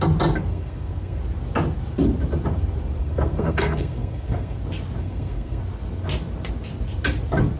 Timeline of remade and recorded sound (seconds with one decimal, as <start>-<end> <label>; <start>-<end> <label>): 0.0-0.5 recorded; 0.5-1.2 remade; 1.2-3.0 recorded; 3.0-4.6 remade; 4.6-5.0 recorded; 5.0-5.6 remade; 5.6-7.6 recorded